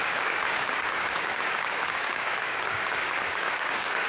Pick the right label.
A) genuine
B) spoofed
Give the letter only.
B